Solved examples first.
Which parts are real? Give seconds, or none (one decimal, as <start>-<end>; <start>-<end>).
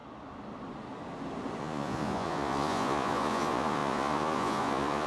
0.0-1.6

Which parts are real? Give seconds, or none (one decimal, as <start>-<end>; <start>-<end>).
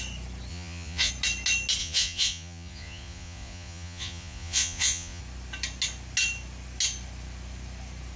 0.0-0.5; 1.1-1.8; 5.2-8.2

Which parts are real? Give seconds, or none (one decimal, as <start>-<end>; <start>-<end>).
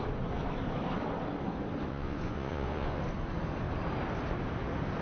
0.0-1.9; 3.0-5.0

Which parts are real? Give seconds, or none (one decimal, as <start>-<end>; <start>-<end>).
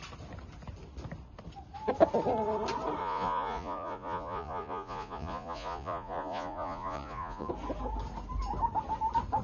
0.0-3.0; 7.5-9.4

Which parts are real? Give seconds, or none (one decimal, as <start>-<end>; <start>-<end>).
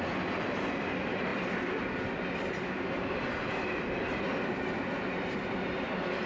0.0-6.3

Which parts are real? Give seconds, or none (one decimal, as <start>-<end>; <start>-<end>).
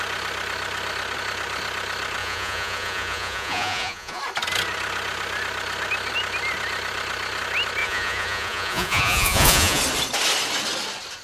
0.0-2.2; 4.2-7.8; 9.8-11.2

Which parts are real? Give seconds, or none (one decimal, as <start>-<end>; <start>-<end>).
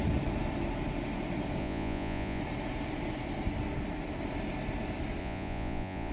0.0-1.6; 2.4-5.2